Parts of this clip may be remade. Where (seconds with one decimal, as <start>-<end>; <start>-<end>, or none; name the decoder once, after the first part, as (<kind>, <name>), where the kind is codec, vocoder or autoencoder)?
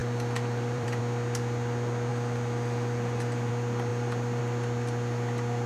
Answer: 0.0-1.0 (vocoder, BigVGAN v2); 2.1-3.5; 3.9-4.4